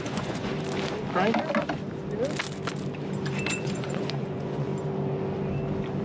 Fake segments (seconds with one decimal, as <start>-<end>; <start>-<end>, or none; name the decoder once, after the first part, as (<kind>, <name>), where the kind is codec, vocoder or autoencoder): 0.0-0.5 (vocoder, Vocos); 3.5-4.7